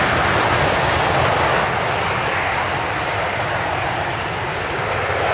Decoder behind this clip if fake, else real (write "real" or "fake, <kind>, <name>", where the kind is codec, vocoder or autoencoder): real